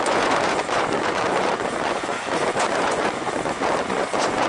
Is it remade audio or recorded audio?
remade